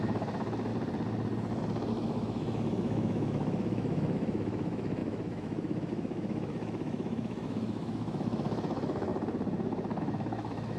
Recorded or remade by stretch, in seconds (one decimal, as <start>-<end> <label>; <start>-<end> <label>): 0.0-0.7 remade; 0.7-1.9 recorded; 1.9-9.1 remade; 9.1-10.0 recorded; 10.0-10.8 remade